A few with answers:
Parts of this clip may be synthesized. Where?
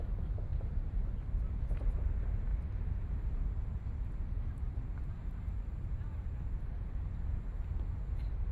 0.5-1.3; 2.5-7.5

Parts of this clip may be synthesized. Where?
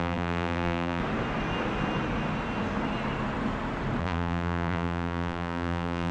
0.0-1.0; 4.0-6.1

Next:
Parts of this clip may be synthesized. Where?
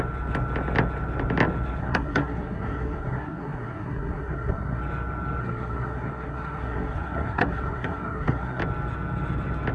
1.8-4.8; 5.4-8.6